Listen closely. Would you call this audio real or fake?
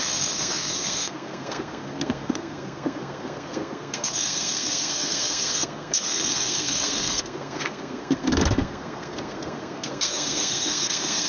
fake